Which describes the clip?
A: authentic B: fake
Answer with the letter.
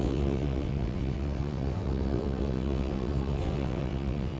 B